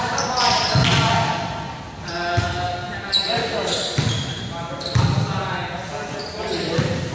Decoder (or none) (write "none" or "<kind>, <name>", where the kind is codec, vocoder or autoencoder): none